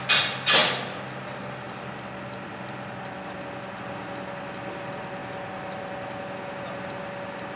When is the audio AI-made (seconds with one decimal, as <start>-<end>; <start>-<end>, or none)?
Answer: none